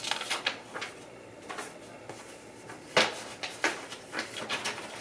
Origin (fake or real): real